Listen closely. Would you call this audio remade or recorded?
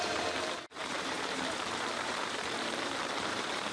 remade